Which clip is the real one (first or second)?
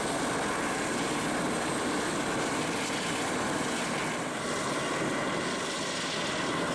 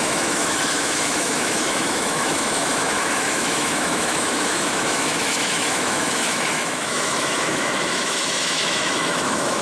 first